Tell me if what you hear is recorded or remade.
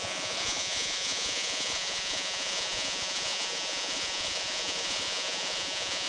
remade